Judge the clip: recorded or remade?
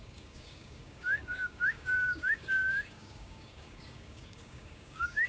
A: remade